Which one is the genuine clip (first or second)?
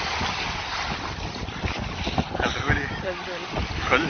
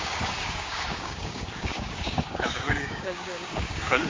first